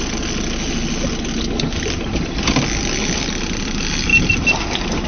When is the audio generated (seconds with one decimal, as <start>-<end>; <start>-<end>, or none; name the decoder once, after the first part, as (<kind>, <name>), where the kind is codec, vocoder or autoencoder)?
none